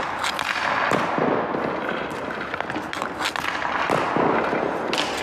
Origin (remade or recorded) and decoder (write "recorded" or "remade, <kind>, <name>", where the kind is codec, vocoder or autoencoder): recorded